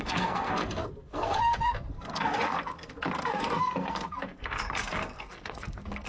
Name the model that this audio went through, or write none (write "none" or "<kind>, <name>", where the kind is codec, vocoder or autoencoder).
codec, SNAC